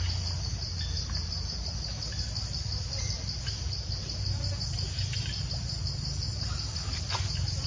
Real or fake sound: real